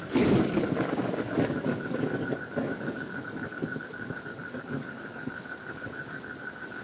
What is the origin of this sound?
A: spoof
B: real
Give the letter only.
A